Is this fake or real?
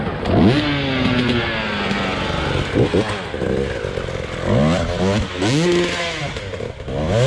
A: real